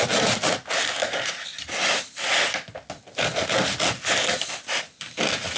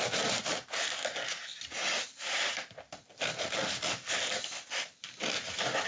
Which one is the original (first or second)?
first